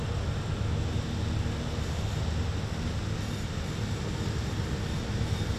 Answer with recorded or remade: recorded